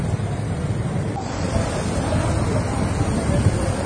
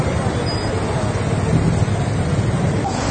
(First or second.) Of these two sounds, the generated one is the first